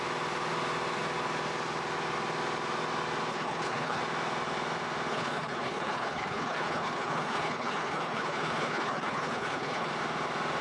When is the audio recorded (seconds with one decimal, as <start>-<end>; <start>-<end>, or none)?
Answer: 0.0-3.3; 4.0-5.1; 9.9-10.6